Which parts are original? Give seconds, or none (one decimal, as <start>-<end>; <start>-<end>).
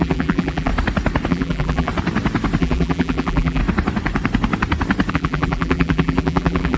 0.7-1.3; 1.9-2.6; 3.6-5.1